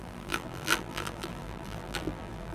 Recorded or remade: remade